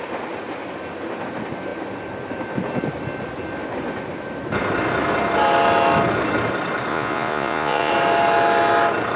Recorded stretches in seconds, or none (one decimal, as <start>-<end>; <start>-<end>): 0.0-6.9; 7.9-9.2